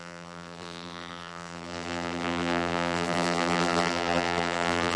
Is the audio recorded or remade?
remade